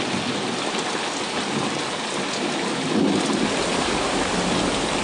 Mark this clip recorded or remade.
recorded